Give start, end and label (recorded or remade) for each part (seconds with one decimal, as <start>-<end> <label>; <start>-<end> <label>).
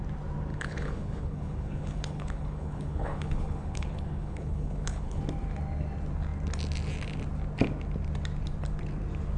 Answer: 0.0-0.5 recorded; 0.5-5.2 remade; 5.2-9.4 recorded